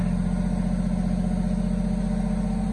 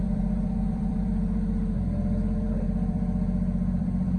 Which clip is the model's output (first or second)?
second